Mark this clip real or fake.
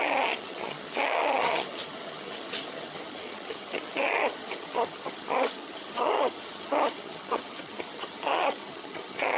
fake